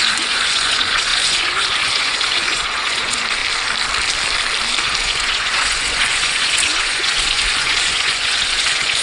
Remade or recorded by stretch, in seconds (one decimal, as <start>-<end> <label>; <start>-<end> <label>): 0.0-3.4 remade; 3.4-4.8 recorded; 4.8-9.0 remade